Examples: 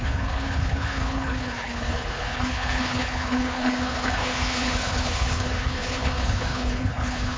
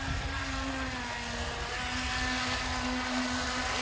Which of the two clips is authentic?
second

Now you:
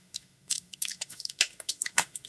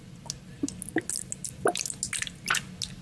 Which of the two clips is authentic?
second